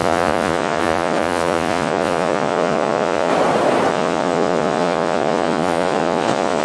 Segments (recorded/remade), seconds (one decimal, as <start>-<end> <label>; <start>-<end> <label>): 0.0-3.3 remade; 3.3-3.9 recorded; 3.9-6.6 remade